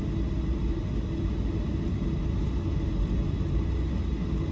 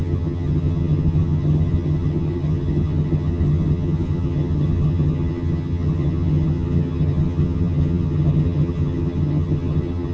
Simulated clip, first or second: second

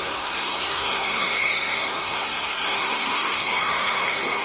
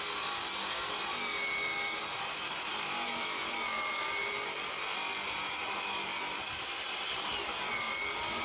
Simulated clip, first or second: first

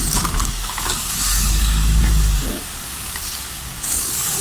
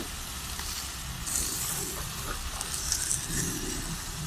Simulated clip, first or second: first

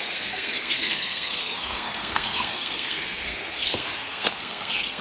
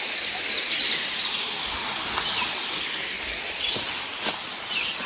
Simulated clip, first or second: first